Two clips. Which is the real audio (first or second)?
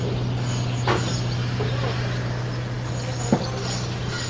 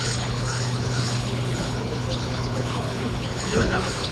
first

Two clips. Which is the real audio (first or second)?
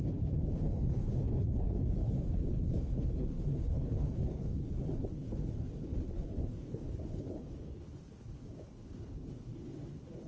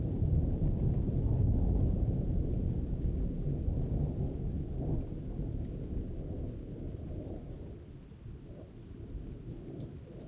second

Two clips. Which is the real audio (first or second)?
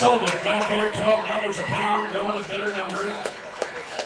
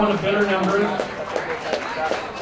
second